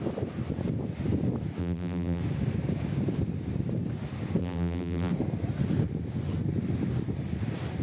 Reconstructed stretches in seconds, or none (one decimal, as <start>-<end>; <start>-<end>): 1.6-2.2; 4.4-5.1